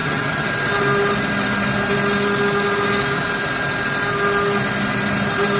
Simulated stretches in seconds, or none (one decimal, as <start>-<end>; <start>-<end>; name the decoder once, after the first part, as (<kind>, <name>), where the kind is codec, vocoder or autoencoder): 0.0-0.5 (vocoder, HiFi-GAN)

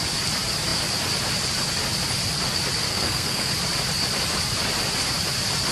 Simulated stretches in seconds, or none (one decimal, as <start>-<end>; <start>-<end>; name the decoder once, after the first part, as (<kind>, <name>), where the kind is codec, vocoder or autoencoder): 2.9-3.5 (codec, SNAC)

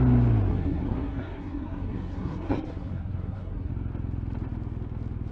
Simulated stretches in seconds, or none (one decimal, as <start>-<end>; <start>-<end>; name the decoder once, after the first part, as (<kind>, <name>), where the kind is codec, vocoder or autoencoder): 0.5-3.7 (codec, SNAC)

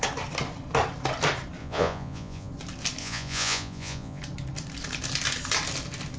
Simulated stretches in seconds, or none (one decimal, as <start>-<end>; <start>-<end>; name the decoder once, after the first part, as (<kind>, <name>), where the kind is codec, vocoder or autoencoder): 1.6-2.5 (vocoder, Vocos); 3.0-4.2

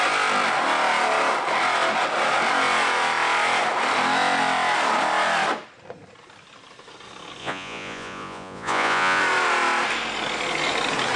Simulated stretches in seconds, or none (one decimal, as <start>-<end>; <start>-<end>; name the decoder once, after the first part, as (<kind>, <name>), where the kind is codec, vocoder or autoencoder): 7.4-9.2 (vocoder, Vocos)

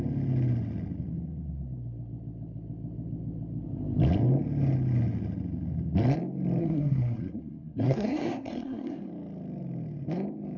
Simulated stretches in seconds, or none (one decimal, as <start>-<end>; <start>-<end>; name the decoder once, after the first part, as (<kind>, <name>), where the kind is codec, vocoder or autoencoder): 6.6-9.1 (codec, SNAC)

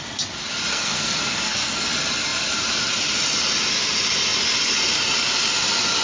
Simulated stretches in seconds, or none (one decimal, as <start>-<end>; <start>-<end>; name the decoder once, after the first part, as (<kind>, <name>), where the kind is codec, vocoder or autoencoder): 0.7-1.9 (codec, SNAC)